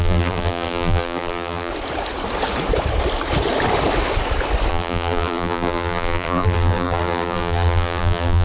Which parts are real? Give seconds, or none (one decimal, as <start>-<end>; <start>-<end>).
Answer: 1.7-4.7